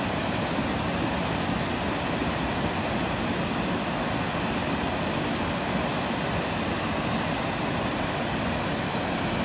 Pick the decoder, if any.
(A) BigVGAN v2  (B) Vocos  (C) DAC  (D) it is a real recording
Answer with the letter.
D